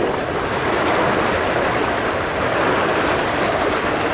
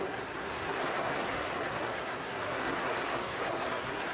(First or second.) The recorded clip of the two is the first